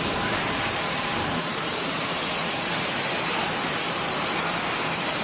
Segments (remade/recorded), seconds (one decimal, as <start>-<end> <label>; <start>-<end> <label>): 0.0-5.2 remade